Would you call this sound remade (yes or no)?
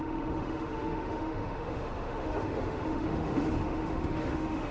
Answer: yes